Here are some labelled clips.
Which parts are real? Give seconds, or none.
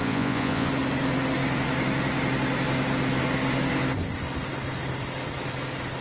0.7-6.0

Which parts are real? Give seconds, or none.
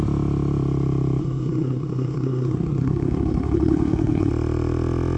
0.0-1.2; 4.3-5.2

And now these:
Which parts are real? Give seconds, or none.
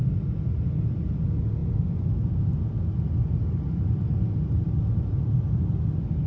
0.0-6.3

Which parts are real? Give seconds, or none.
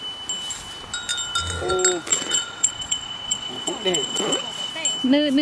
0.0-2.1; 4.7-5.4